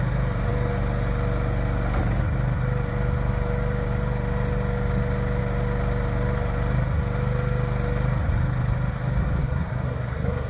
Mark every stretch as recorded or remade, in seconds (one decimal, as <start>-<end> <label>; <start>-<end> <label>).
0.0-9.4 recorded; 9.4-10.5 remade